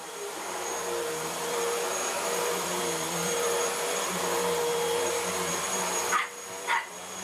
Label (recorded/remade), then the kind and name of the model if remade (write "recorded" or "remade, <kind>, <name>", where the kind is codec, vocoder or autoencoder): remade, vocoder, BigVGAN v2